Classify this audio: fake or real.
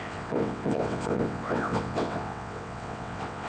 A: fake